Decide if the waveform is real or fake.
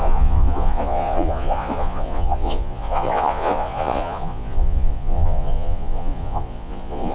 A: fake